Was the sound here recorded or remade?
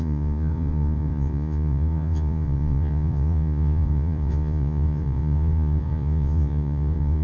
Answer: remade